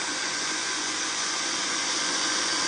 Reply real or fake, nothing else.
fake